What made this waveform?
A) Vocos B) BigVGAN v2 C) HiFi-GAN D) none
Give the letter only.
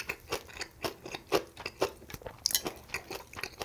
D